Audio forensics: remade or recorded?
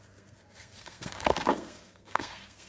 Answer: remade